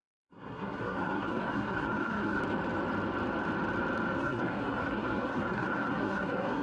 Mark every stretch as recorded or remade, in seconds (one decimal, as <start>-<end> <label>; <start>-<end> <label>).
0.0-2.4 remade; 2.4-4.2 recorded; 4.2-6.6 remade